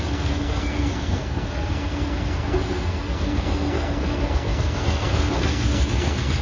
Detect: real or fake fake